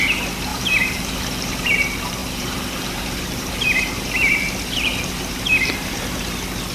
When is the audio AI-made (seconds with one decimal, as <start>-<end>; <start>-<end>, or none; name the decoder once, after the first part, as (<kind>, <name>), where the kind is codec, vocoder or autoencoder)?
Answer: 0.5-1.7 (vocoder, BigVGAN v2); 2.2-6.2